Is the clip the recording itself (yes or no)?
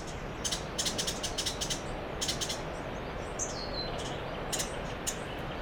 yes